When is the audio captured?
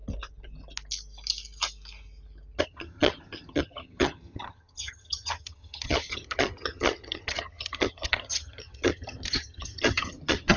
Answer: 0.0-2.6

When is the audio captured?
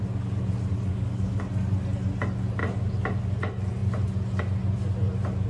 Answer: 0.0-0.9; 1.4-5.5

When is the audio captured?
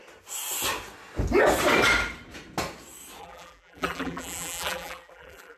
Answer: 0.0-3.2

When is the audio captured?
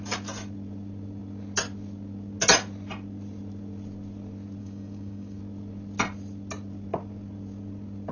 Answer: 0.0-4.6; 5.4-8.1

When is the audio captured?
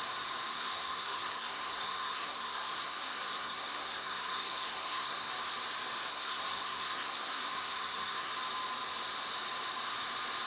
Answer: 0.0-0.5; 5.3-6.1; 8.3-10.5